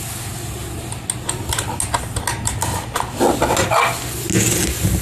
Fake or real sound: real